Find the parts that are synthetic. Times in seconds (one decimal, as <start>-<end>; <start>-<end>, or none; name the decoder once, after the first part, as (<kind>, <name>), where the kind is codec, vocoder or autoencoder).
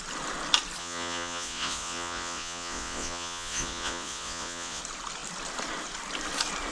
0.8-4.8 (vocoder, Vocos)